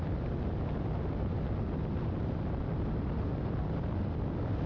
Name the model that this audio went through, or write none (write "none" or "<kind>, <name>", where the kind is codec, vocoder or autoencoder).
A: none